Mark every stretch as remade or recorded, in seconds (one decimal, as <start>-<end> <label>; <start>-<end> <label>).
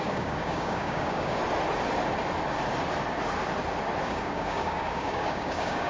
0.0-1.4 remade; 1.4-4.0 recorded; 4.0-5.9 remade